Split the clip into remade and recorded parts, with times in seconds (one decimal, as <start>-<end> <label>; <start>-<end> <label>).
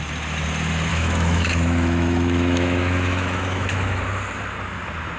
0.0-0.9 recorded; 0.9-4.0 remade; 4.0-5.2 recorded